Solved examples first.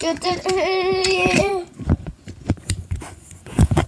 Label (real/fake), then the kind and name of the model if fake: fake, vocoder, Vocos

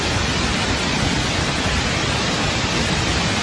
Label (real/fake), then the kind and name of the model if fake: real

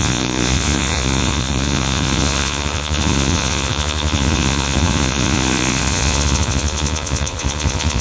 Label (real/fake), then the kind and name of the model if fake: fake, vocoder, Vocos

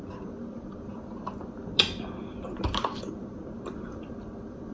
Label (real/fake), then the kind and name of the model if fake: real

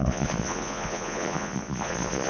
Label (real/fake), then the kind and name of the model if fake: fake, vocoder, Vocos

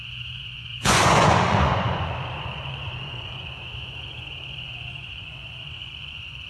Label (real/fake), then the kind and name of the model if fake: fake, vocoder, Vocos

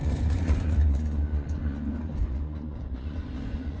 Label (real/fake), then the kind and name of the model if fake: fake, vocoder, Vocos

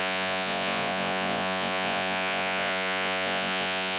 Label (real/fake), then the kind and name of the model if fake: fake, vocoder, Vocos